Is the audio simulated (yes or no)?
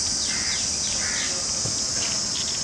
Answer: no